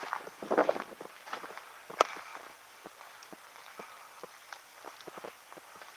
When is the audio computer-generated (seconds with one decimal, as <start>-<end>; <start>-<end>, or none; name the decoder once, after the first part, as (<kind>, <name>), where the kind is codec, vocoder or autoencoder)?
none